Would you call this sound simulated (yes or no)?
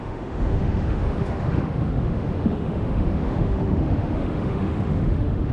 yes